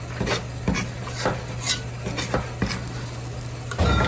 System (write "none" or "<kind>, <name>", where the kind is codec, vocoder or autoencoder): none